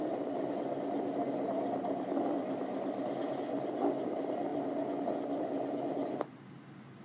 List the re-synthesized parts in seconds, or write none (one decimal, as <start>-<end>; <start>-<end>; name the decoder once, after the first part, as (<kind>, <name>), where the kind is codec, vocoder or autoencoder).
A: none